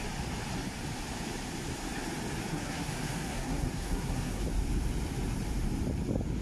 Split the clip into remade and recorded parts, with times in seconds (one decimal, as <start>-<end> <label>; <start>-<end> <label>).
0.0-2.5 recorded; 2.5-4.4 remade; 4.4-6.4 recorded